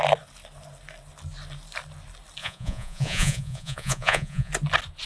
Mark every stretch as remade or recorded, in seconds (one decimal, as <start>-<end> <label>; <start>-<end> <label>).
0.0-2.4 recorded; 2.4-4.5 remade; 4.5-5.1 recorded